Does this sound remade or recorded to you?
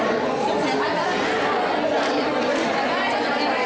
recorded